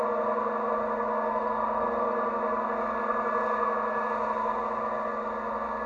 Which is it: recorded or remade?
recorded